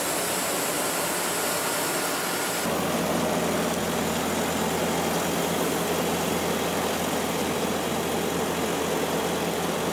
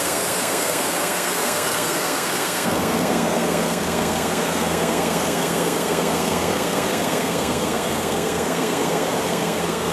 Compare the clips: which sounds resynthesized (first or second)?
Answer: second